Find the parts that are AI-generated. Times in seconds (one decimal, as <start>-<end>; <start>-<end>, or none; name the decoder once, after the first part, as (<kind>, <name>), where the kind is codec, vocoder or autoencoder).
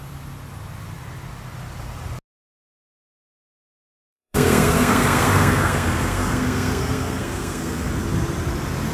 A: 2.8-7.9 (codec, SNAC)